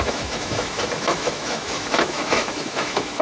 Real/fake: fake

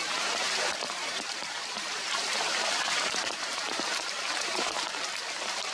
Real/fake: fake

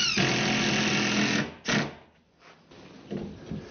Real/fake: real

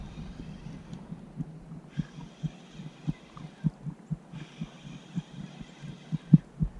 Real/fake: real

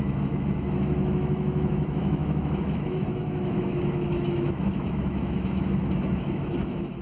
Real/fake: fake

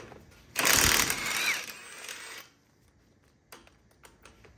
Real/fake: real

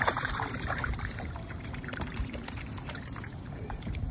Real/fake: fake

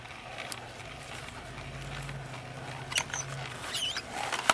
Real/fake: real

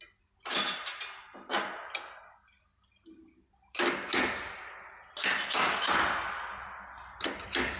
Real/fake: real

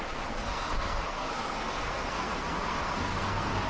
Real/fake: fake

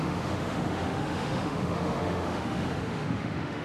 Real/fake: fake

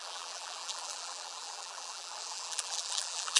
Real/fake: fake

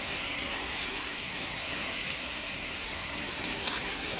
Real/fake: fake